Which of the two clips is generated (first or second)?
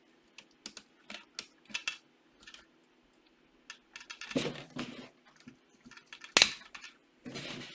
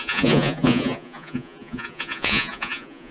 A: second